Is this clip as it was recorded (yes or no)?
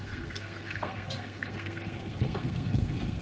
no